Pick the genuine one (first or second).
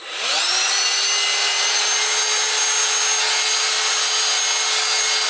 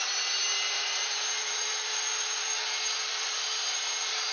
first